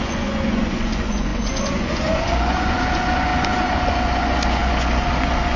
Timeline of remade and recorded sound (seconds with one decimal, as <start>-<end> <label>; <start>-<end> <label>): 0.0-5.6 remade